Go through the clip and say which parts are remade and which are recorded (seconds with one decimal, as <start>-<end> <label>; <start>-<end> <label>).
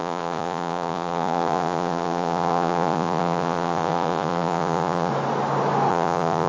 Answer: 0.0-5.1 remade; 5.1-5.9 recorded; 5.9-6.5 remade